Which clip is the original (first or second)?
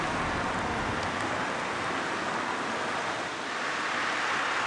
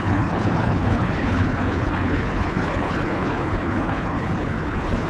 first